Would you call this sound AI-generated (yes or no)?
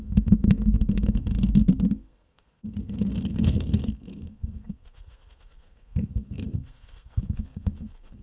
yes